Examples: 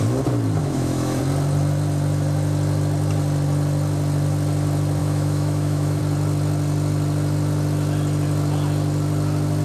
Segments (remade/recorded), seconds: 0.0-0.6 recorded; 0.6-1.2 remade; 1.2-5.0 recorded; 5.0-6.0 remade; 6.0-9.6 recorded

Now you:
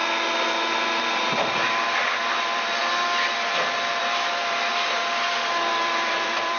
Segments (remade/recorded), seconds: 0.0-1.0 recorded; 1.0-2.8 remade; 2.8-3.9 recorded; 3.9-4.7 remade; 4.7-5.7 recorded; 5.7-6.6 remade

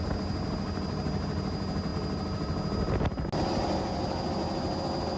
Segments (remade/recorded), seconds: 0.0-5.2 recorded

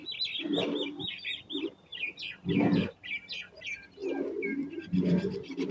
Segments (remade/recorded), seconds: 0.0-0.6 recorded; 0.6-4.0 remade; 4.0-4.7 recorded; 4.7-5.7 remade

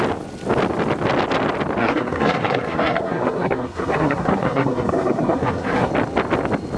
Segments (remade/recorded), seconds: 0.0-1.8 recorded; 1.8-5.9 remade; 5.9-6.8 recorded